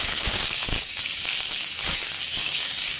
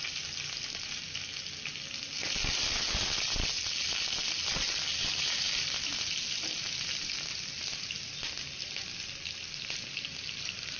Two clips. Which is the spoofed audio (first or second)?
first